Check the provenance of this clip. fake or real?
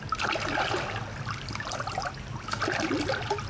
real